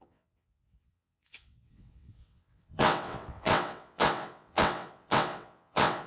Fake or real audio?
fake